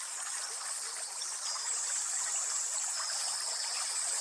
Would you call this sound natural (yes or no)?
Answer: yes